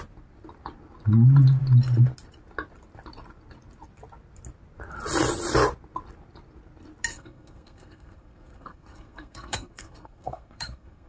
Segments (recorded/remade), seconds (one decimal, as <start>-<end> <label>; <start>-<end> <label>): 0.0-7.1 recorded; 7.1-11.1 remade